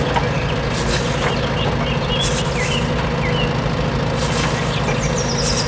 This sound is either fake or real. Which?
real